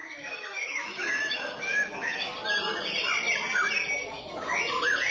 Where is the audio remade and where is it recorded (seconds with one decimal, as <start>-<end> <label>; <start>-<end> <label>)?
0.0-2.3 remade; 2.3-4.0 recorded; 4.0-4.5 remade; 4.5-5.1 recorded